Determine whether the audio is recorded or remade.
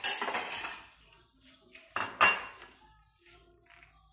recorded